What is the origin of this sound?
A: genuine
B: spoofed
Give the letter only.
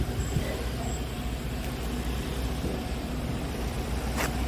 A